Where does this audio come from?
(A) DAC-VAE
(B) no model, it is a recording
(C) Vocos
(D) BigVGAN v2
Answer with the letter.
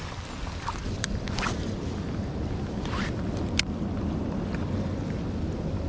B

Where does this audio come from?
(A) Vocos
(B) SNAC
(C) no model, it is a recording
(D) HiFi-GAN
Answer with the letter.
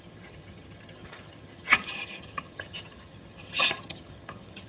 D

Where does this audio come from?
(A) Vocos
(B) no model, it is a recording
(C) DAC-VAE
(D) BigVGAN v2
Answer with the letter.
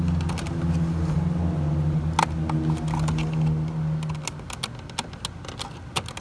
B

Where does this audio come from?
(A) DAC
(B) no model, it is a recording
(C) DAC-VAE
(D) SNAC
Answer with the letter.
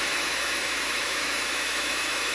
C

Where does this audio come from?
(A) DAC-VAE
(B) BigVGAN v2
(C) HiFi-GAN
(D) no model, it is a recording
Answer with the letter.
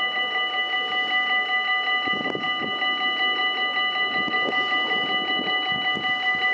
D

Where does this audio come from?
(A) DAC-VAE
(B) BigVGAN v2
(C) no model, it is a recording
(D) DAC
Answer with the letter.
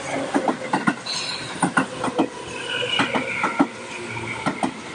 C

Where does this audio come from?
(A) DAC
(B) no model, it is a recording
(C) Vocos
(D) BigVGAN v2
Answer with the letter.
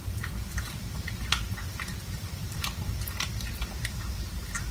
B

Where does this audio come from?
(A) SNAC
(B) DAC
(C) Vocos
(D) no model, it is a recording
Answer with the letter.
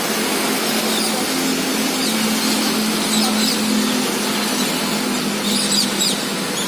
D